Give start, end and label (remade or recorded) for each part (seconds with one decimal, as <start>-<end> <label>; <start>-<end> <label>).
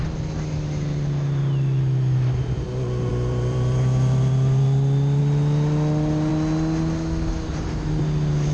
0.0-3.1 recorded; 3.1-5.2 remade; 5.2-8.5 recorded